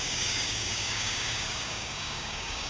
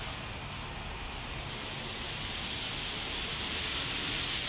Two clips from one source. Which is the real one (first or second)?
second